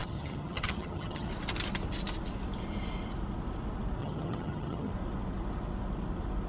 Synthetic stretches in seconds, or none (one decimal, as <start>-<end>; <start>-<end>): 0.0-1.3; 4.0-4.9